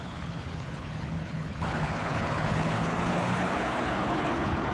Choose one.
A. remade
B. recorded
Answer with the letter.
A